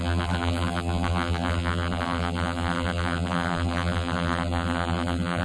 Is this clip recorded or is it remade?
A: remade